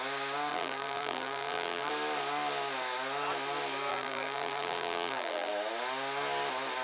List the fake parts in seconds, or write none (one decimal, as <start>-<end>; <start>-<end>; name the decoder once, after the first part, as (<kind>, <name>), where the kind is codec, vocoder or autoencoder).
0.5-1.9 (vocoder, BigVGAN v2); 3.9-5.5